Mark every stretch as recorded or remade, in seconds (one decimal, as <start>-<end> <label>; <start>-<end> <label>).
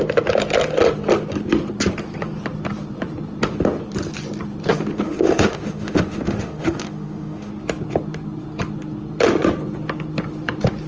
0.0-4.7 recorded; 4.7-7.5 remade; 7.5-10.9 recorded